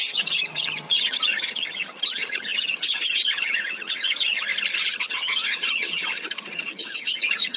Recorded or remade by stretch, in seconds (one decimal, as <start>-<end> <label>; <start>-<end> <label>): 0.0-4.5 remade; 4.5-5.0 recorded; 5.0-7.6 remade